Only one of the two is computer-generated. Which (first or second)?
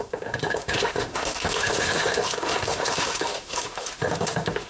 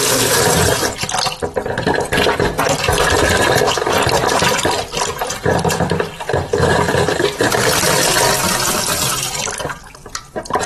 first